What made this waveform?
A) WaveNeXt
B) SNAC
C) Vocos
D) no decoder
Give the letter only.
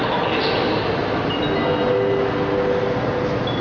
D